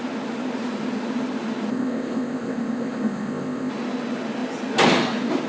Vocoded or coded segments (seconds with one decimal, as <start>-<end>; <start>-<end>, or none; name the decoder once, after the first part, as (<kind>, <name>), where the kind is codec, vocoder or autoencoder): 1.7-3.7 (codec, ZipCodec)